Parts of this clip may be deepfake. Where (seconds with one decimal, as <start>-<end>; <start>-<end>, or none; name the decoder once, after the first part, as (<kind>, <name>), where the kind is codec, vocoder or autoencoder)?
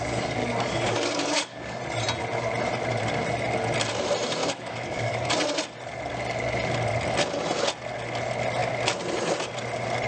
0.4-1.8 (codec, DAC); 4.4-5.3